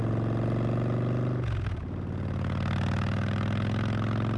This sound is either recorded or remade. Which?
recorded